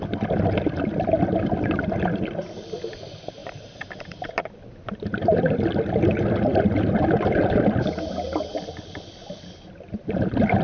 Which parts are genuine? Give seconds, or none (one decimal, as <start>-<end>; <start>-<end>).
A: 0.0-10.6